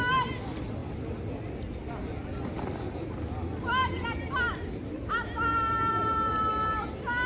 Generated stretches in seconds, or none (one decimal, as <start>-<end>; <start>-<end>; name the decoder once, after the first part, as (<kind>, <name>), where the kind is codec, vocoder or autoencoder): none